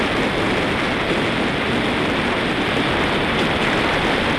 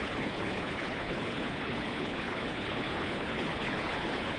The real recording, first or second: first